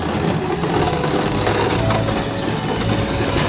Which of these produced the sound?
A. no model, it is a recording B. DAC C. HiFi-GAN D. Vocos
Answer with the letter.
A